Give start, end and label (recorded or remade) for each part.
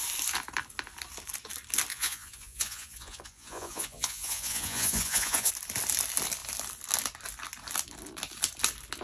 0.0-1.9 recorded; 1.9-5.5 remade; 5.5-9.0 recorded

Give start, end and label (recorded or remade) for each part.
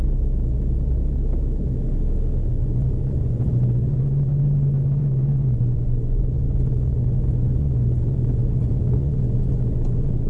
0.0-2.5 recorded; 2.5-4.3 remade; 4.3-5.0 recorded; 5.0-10.3 remade